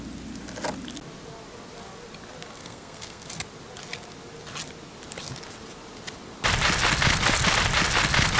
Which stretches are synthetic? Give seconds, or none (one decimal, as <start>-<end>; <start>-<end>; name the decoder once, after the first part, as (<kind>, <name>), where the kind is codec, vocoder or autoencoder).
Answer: 2.6-3.3 (codec, SNAC)